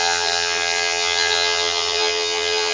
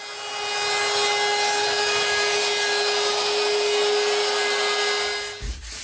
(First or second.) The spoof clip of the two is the first